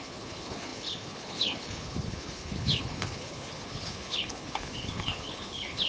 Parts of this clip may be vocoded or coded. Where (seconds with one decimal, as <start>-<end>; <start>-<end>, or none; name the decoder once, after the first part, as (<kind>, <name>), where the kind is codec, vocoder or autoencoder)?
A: 0.0-5.9 (codec, HILCodec)